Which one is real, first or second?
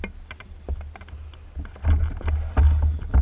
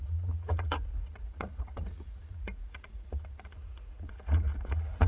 first